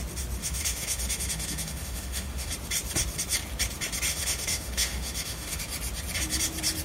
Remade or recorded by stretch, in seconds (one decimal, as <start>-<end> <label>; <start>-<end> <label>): 0.0-0.4 recorded; 0.4-2.5 remade; 2.5-4.1 recorded; 4.1-5.6 remade; 5.6-6.8 recorded